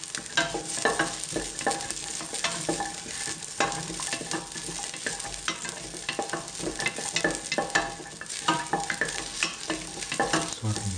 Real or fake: real